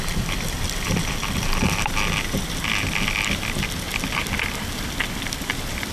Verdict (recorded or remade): recorded